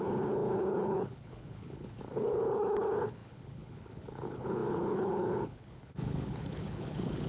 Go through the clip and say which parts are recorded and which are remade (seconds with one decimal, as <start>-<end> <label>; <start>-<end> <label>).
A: 0.0-7.3 remade